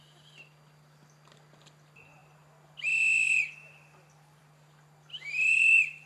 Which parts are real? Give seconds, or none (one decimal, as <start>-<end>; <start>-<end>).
0.0-6.1